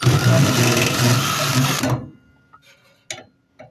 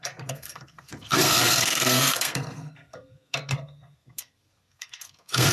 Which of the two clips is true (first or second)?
first